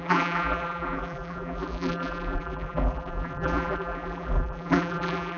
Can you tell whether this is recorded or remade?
remade